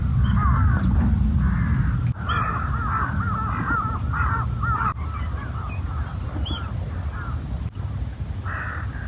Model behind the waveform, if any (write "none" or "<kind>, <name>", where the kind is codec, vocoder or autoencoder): none